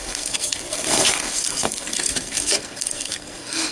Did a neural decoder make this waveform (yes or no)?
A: yes